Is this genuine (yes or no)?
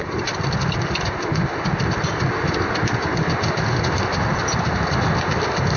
yes